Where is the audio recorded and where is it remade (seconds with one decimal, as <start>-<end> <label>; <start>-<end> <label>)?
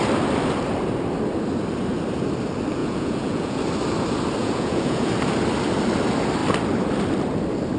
0.0-2.8 recorded; 2.8-3.6 remade; 3.6-4.4 recorded; 4.4-5.1 remade; 5.1-7.8 recorded